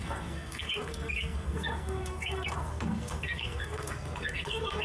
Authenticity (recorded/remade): remade